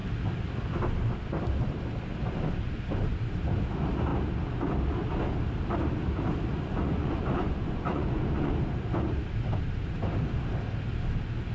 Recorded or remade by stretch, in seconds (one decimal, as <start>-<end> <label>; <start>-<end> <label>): 0.0-6.5 recorded; 6.5-8.5 remade; 8.5-11.5 recorded